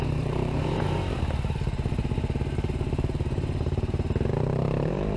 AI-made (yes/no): yes